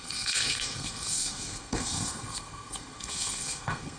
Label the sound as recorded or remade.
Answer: remade